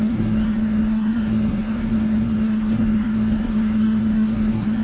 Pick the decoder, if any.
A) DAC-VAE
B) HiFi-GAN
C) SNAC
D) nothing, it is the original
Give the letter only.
C